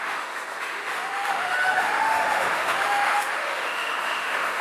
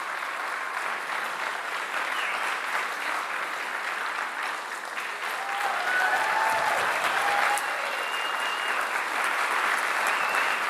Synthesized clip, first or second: first